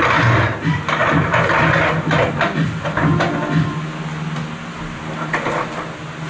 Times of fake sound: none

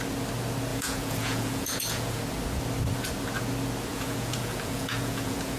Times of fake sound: 0.7-2.2 (vocoder, Vocos); 3.9-5.6

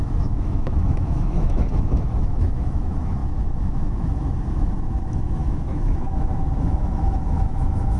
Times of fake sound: 0.0-8.0 (autoencoder, DAC-VAE)